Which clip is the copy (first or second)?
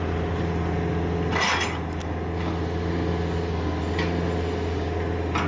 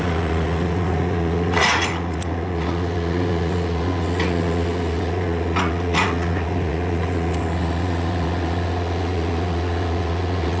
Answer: second